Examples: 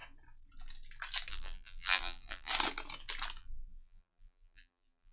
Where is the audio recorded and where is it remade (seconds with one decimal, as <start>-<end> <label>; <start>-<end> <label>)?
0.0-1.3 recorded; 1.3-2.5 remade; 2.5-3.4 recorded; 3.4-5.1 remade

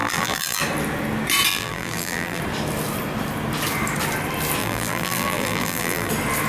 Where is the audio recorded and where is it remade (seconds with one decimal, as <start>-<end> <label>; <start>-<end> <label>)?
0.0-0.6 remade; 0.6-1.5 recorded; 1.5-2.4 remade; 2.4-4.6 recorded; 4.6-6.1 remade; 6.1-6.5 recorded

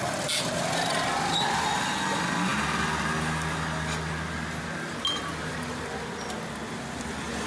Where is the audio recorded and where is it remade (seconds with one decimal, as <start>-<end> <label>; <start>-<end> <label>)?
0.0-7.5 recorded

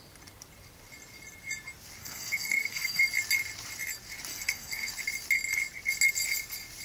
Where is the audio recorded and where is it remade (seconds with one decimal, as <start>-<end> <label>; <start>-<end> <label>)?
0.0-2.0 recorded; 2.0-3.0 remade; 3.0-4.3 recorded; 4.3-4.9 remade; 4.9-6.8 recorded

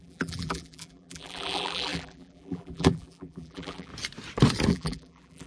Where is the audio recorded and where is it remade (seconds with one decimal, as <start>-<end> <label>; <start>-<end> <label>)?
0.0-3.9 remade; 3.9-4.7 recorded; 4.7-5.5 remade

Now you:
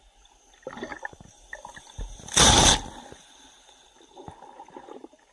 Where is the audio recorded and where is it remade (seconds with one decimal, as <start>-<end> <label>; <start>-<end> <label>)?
0.0-5.3 recorded